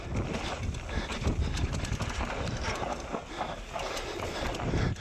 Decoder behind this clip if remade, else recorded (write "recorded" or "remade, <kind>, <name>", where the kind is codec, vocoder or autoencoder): recorded